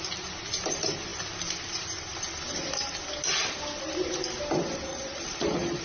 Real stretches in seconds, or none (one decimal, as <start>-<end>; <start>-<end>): 0.0-4.9